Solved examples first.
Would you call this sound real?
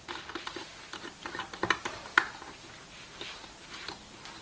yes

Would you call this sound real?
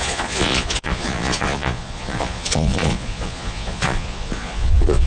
no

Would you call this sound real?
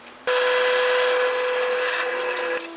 yes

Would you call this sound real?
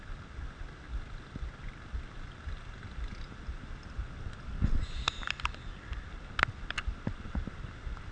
yes